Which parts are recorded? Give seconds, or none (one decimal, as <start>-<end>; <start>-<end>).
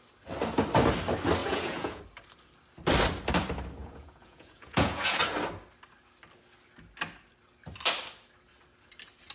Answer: 0.0-1.4; 2.0-3.8; 5.2-9.3